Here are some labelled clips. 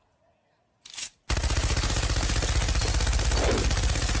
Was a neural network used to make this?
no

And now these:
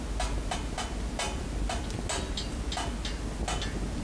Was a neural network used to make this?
no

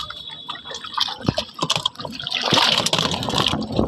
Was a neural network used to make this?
no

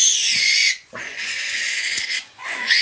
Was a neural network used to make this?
yes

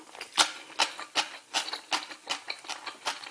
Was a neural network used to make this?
no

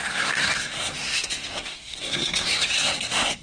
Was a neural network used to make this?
yes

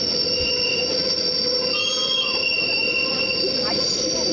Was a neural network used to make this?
no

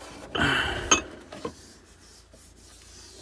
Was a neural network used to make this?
no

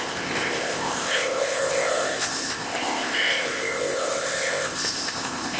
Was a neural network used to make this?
yes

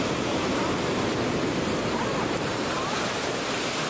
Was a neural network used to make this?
yes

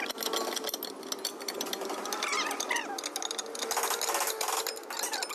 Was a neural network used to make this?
no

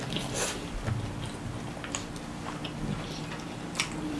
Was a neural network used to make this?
no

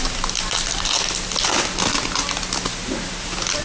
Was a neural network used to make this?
no